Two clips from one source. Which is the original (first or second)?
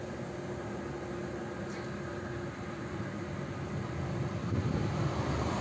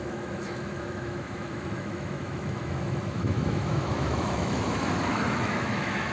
first